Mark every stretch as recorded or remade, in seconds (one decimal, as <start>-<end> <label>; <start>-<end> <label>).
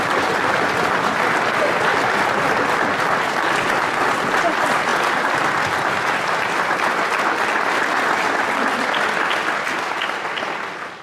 0.0-11.0 recorded